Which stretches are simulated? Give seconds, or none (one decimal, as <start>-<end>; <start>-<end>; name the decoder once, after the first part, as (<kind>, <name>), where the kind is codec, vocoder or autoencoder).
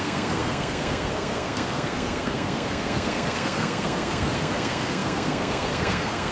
0.0-6.3 (codec, SNAC)